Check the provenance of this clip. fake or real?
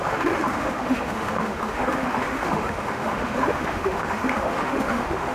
fake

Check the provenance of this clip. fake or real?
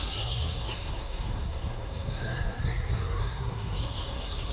fake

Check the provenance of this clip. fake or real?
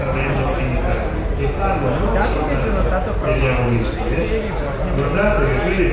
real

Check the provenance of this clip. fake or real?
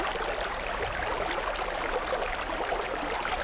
real